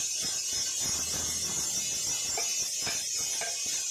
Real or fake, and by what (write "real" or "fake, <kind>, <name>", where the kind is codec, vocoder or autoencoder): real